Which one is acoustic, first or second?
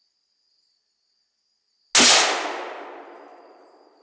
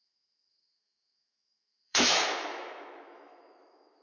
first